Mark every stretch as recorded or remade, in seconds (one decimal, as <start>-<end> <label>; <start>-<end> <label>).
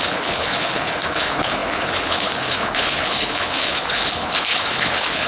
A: 0.0-5.3 remade